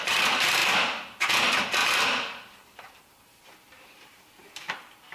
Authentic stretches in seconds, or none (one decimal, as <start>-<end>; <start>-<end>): 0.0-5.1